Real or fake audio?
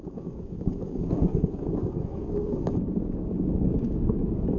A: fake